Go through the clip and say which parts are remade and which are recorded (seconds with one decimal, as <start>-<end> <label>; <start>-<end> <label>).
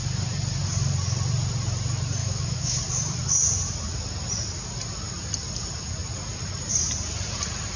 0.0-2.2 recorded; 2.2-2.8 remade; 2.8-7.8 recorded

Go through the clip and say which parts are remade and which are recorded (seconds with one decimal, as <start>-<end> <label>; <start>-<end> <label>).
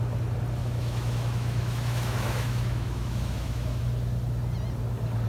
0.0-0.6 recorded; 0.6-3.8 remade; 3.8-5.3 recorded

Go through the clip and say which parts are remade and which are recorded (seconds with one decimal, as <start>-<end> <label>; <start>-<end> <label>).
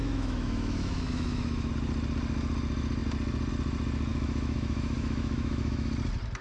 0.0-1.7 remade; 1.7-4.1 recorded; 4.1-5.9 remade; 5.9-6.4 recorded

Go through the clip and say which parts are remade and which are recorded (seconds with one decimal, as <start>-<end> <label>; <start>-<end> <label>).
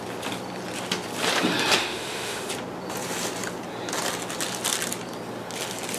0.0-1.8 recorded; 1.8-2.5 remade; 2.5-6.0 recorded